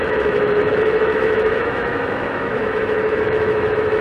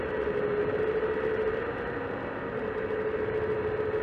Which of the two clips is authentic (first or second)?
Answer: second